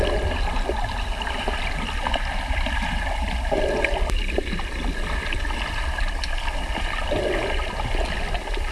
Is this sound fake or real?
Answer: real